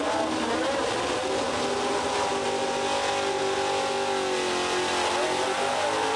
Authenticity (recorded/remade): recorded